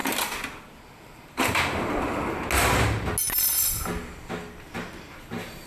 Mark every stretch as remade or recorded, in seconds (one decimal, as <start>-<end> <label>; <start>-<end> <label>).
0.0-1.0 recorded; 1.0-2.2 remade; 2.2-4.9 recorded; 4.9-5.7 remade